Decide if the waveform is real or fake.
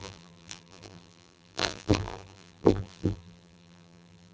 fake